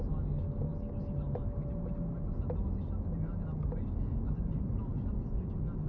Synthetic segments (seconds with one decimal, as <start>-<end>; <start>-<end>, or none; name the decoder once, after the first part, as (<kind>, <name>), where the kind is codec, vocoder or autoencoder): none